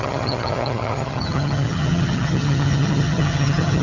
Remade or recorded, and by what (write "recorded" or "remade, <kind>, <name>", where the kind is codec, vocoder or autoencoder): remade, vocoder, HiFi-GAN